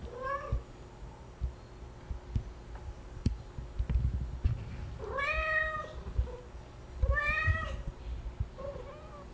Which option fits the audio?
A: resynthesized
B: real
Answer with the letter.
B